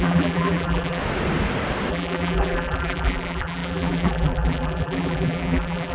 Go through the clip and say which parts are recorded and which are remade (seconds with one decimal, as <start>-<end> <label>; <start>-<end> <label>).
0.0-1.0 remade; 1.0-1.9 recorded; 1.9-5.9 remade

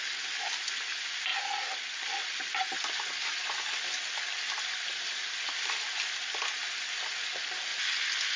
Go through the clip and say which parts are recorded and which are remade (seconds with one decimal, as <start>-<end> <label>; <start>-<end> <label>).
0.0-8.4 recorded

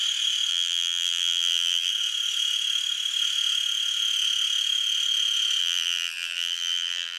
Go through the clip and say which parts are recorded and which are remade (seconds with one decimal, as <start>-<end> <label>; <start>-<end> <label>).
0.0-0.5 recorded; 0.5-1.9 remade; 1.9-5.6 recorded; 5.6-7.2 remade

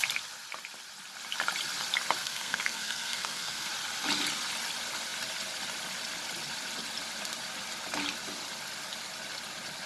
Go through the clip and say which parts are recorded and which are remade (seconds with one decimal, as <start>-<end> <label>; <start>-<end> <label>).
0.0-2.2 recorded; 2.2-3.7 remade; 3.7-9.9 recorded

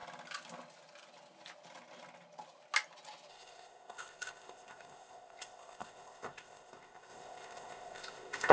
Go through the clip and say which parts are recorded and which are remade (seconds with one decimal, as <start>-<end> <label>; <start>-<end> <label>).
0.0-3.3 recorded; 3.3-8.5 remade

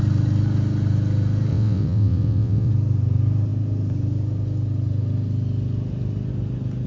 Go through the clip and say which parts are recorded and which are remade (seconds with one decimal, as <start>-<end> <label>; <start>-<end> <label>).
0.0-1.5 recorded; 1.5-2.7 remade; 2.7-6.9 recorded

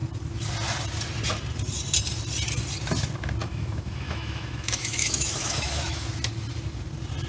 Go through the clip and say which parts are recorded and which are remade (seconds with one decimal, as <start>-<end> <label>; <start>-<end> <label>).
0.0-3.4 recorded; 3.4-6.1 remade; 6.1-7.3 recorded